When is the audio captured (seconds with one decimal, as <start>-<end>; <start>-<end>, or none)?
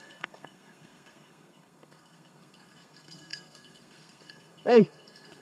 none